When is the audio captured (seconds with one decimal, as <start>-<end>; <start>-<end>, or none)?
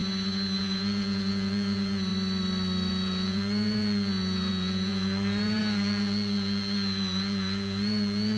0.0-0.6; 2.1-2.9